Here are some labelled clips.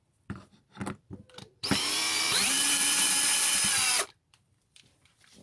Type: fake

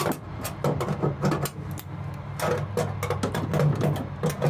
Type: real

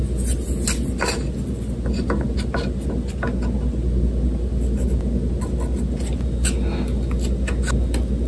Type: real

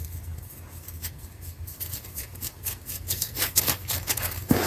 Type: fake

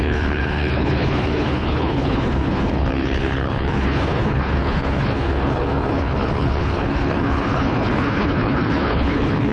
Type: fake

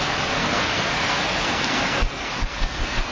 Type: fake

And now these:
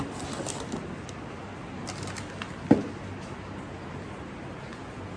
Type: real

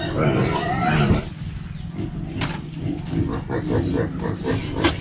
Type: real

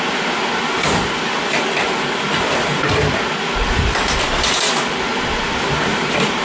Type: fake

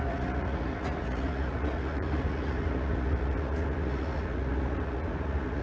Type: fake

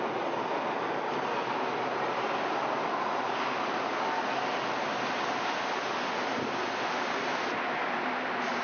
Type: real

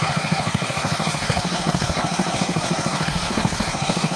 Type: fake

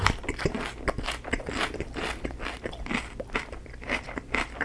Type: real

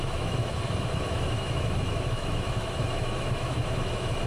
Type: fake